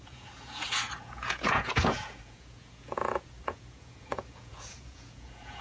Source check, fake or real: fake